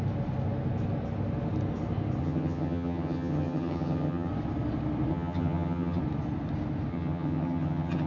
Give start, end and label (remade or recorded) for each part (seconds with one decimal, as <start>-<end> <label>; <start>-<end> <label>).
0.0-2.2 recorded; 2.2-4.3 remade; 4.3-5.1 recorded; 5.1-6.0 remade; 6.0-6.9 recorded; 6.9-8.1 remade